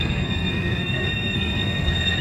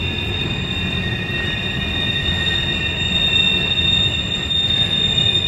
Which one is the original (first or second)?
second